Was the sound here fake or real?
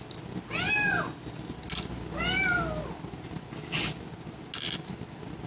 real